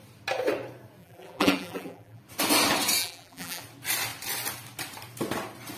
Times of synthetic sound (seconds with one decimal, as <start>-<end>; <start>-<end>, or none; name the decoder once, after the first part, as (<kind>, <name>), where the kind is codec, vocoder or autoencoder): 1.0-2.2 (vocoder, BigVGAN v2); 3.0-3.6